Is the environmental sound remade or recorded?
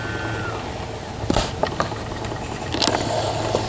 recorded